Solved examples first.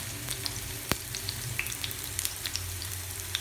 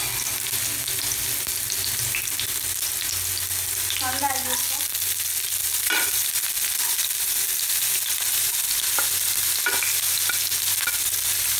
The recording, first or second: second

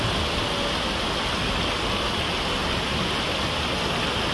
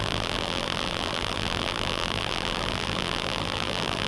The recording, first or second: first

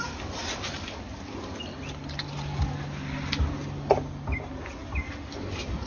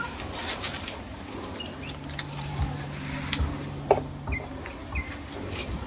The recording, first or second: first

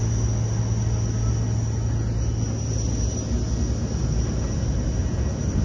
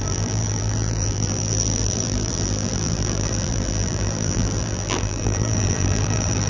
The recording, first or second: first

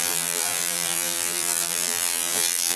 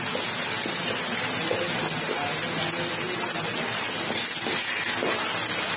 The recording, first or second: second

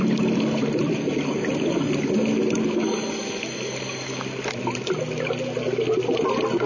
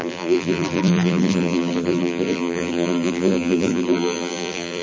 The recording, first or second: first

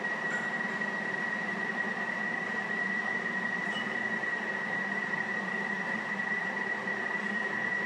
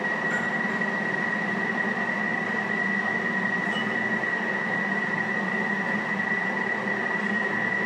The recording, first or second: second